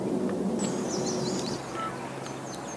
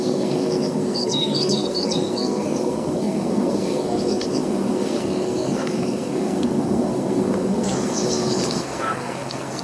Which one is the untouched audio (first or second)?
first